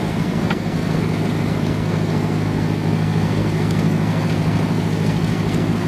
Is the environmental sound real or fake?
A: fake